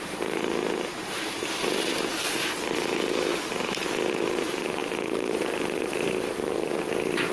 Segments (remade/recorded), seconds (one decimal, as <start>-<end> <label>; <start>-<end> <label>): 0.0-2.1 remade; 2.1-4.1 recorded; 4.1-7.3 remade